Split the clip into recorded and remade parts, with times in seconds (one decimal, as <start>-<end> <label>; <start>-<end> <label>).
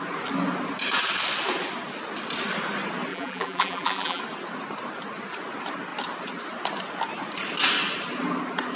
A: 0.0-3.1 recorded; 3.1-4.2 remade; 4.2-8.8 recorded